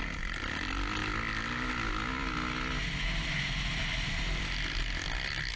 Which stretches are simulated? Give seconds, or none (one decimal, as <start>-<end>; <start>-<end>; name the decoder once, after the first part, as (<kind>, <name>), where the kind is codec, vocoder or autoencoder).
none